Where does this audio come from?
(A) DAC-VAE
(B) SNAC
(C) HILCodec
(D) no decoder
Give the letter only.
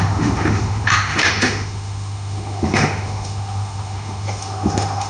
A